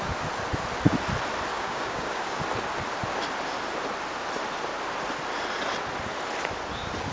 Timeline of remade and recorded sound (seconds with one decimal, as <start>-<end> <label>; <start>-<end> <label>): 0.0-1.5 recorded; 1.5-2.4 remade; 2.4-7.1 recorded